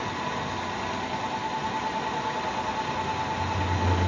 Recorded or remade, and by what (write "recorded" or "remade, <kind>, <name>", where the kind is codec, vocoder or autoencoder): recorded